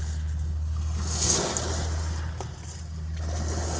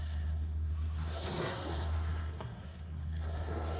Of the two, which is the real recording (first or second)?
first